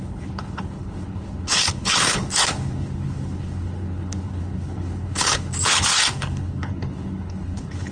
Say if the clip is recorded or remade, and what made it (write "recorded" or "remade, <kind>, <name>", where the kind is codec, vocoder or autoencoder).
remade, codec, HILCodec